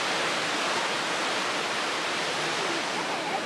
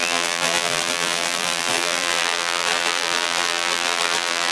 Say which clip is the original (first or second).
first